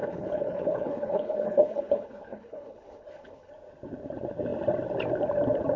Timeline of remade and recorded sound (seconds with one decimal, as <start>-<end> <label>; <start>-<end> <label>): 0.0-3.5 remade; 3.5-5.8 recorded